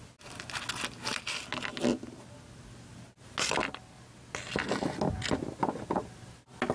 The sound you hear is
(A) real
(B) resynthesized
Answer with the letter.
A